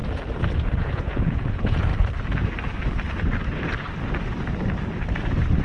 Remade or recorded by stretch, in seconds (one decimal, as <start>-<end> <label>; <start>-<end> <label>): 0.0-0.6 recorded; 0.6-1.9 remade; 1.9-5.6 recorded